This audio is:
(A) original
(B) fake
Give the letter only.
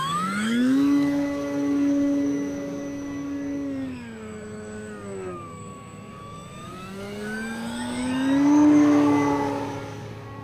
B